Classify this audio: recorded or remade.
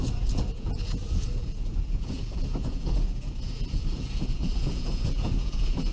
remade